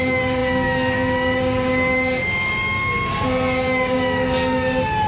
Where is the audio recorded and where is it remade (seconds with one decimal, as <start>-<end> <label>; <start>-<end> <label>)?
0.0-5.1 remade